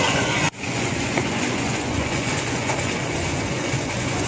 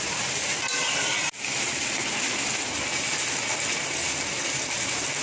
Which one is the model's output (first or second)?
first